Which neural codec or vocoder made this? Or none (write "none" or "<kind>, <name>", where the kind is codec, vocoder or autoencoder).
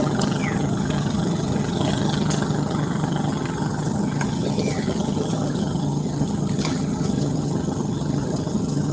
vocoder, HiFi-GAN